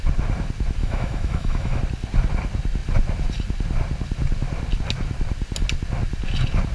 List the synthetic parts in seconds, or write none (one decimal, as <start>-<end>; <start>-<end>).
0.8-1.8